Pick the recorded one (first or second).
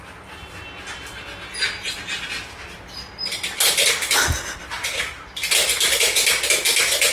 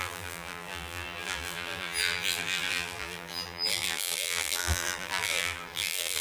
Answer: first